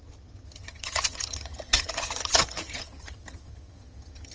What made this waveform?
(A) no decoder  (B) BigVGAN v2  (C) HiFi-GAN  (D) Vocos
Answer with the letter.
C